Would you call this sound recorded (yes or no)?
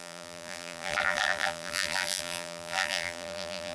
no